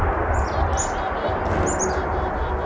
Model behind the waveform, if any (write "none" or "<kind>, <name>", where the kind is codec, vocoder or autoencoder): none